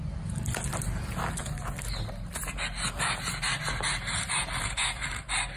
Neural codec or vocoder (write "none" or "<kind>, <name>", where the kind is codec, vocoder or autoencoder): none